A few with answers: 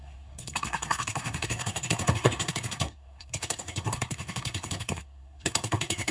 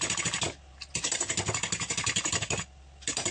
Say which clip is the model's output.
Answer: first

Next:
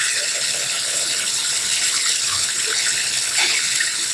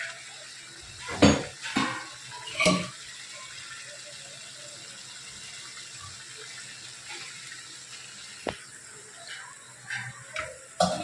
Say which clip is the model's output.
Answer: first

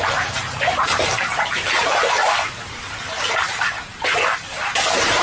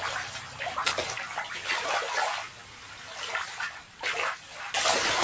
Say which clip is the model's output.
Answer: first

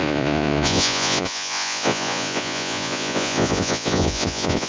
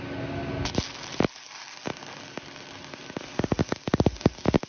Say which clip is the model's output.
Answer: first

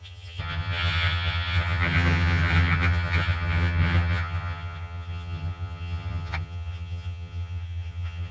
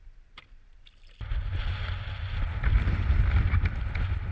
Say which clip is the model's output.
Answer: first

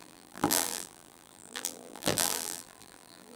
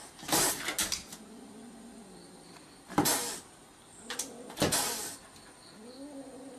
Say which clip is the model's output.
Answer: first